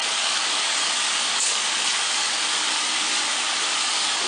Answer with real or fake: fake